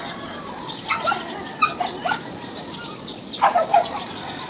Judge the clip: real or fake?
real